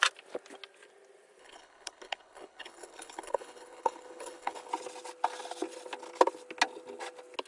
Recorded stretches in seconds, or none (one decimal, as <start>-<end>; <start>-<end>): 0.0-1.4; 4.7-7.5